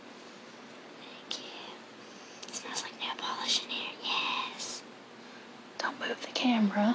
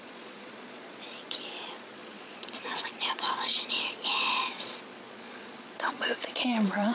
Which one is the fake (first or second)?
second